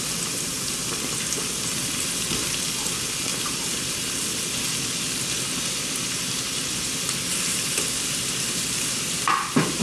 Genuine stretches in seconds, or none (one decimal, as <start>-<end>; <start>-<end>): 0.0-9.8